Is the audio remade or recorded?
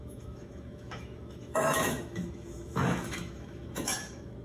remade